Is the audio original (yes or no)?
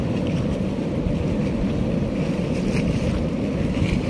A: yes